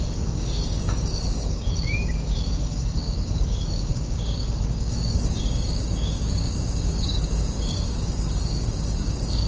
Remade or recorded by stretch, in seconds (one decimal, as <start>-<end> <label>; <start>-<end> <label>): 0.0-9.5 remade